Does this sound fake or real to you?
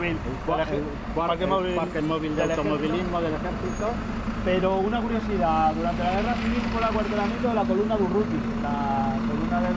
real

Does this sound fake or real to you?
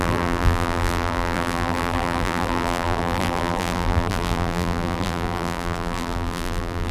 fake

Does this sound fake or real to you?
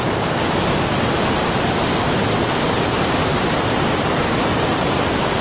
real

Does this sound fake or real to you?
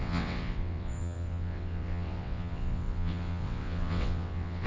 fake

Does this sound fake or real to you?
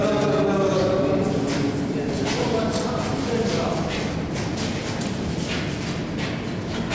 real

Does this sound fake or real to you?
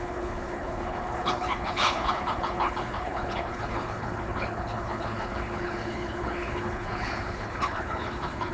fake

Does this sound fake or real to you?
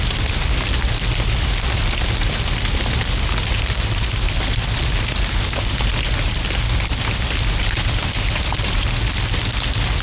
real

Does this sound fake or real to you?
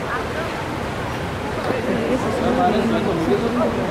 real